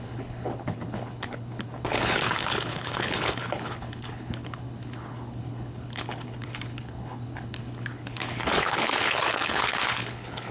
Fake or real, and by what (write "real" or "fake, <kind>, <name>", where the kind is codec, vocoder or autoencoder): fake, codec, HILCodec